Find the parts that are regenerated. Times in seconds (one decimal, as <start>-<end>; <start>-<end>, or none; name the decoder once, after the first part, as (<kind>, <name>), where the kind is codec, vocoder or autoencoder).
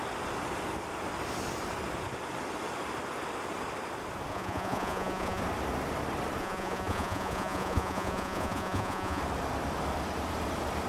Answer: 4.3-5.4 (vocoder, Vocos); 6.4-9.2